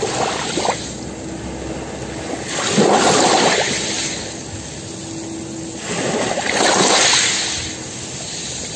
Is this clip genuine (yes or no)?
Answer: yes